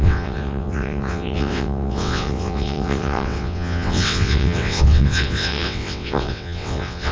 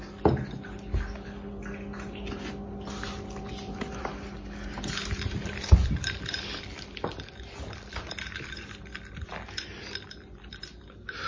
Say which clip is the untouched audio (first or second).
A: second